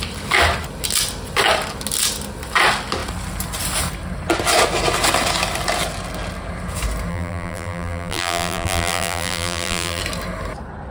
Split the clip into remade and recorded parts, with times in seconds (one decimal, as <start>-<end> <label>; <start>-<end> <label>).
0.0-7.1 recorded; 7.1-10.0 remade; 10.0-10.9 recorded